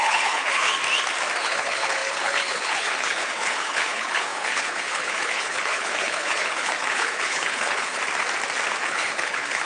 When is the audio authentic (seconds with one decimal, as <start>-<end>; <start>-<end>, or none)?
0.7-1.4; 8.0-8.8